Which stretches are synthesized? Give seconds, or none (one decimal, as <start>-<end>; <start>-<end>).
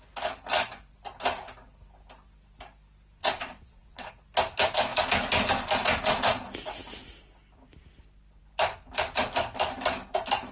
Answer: 3.2-4.1